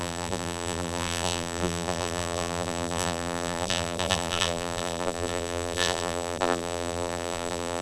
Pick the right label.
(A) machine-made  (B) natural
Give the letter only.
A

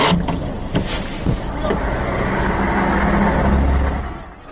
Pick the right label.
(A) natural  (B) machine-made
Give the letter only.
A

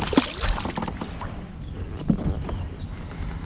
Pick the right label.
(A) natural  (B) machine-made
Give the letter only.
A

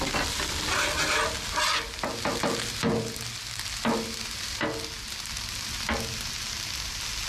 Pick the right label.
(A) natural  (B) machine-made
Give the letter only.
A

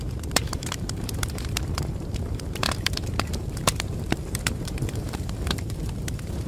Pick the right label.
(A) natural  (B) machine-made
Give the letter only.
B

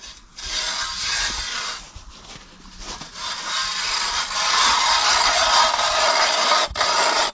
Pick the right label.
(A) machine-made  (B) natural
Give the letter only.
A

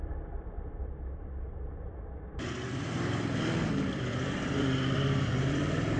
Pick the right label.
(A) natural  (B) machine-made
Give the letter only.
B